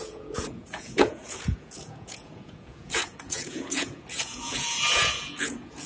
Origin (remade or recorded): remade